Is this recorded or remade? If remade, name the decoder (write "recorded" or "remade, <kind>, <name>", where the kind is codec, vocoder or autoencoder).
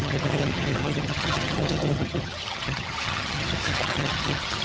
remade, vocoder, HiFi-GAN